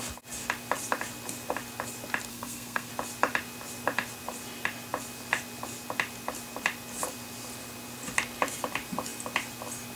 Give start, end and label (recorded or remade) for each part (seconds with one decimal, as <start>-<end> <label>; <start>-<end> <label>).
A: 0.0-2.3 recorded; 2.3-2.9 remade; 2.9-10.0 recorded